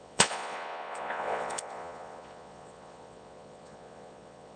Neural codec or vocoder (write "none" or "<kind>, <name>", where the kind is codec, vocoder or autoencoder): vocoder, Vocos